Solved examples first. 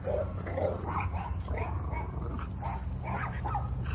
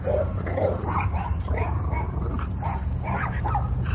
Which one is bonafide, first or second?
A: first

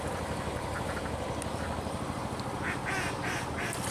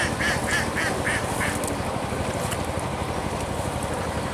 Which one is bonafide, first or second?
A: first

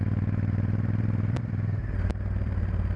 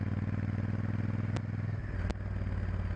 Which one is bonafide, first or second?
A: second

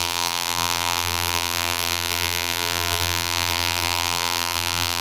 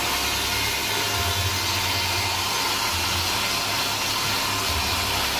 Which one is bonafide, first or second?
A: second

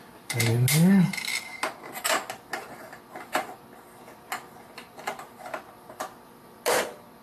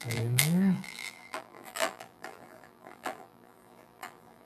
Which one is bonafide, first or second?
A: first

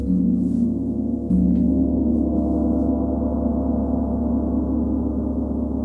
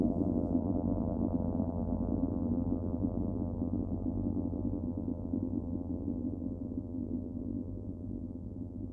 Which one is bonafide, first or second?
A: first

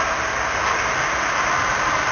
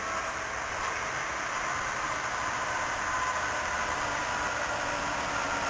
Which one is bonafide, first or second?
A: first